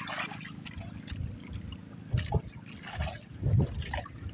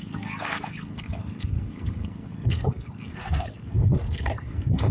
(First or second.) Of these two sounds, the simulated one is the second